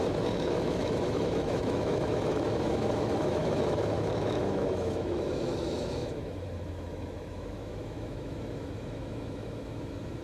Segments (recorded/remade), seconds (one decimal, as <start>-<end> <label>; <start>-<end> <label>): 0.0-10.2 remade